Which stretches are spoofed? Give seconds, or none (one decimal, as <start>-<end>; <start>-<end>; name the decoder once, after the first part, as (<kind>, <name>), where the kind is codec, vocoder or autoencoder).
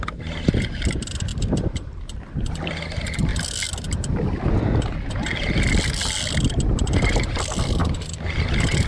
1.3-2.7 (vocoder, BigVGAN v2)